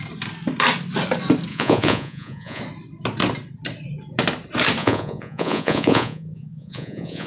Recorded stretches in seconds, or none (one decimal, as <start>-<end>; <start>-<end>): 0.0-1.5; 2.6-4.8